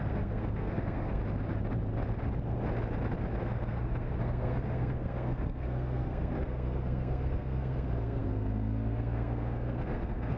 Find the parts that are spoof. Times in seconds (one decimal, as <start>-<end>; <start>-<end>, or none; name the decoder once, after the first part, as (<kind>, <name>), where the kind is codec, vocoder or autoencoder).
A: 0.0-1.2 (codec, SNAC); 3.4-10.4